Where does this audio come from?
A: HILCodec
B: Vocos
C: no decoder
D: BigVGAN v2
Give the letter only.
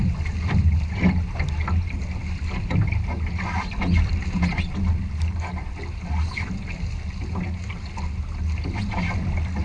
C